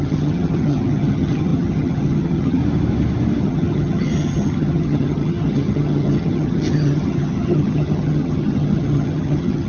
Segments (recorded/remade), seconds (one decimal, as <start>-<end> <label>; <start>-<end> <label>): 0.0-2.6 remade; 2.6-3.4 recorded; 3.4-9.7 remade